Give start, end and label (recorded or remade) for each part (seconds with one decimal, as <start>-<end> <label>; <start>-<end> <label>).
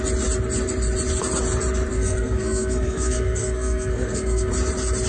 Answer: 0.0-1.9 recorded; 1.9-4.5 remade; 4.5-5.1 recorded